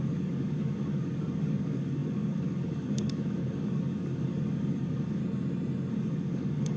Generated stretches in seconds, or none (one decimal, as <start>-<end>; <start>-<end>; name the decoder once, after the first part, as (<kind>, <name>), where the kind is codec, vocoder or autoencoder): 0.0-5.2 (codec, DAC); 5.9-6.8